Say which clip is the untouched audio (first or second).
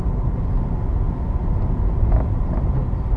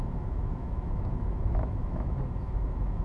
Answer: first